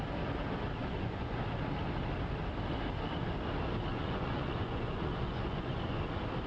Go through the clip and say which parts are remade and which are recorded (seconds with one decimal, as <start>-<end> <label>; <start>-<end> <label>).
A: 0.0-0.8 recorded; 0.8-1.4 remade; 1.4-3.9 recorded; 3.9-6.0 remade; 6.0-6.5 recorded